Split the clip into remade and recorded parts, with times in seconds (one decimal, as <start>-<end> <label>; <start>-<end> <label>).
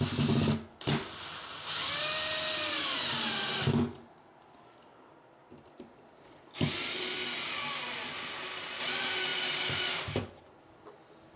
0.0-11.4 recorded